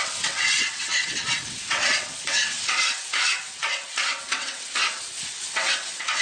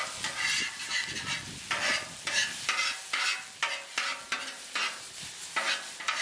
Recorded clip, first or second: second